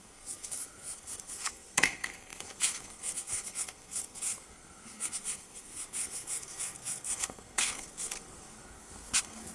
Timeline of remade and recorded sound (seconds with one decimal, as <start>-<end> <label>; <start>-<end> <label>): 0.0-9.5 remade